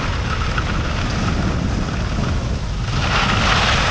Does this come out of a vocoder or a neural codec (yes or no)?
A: no